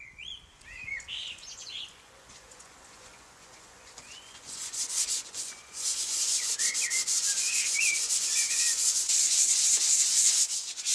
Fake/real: fake